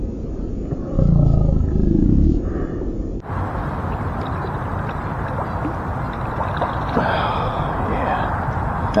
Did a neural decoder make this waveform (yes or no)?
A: yes